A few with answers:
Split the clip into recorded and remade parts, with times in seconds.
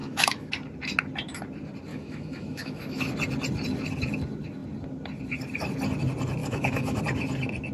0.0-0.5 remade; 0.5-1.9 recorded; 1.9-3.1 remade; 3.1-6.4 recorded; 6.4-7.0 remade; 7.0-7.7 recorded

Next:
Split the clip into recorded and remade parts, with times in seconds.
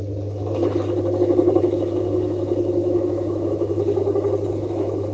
0.0-1.6 recorded; 1.6-4.0 remade; 4.0-4.6 recorded; 4.6-5.1 remade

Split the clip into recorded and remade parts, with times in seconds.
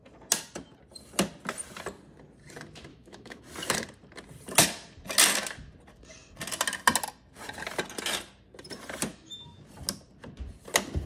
0.0-2.9 recorded; 2.9-3.4 remade; 3.4-9.1 recorded; 9.1-9.6 remade; 9.6-11.1 recorded